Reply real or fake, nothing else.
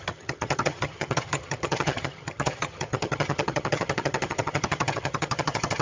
fake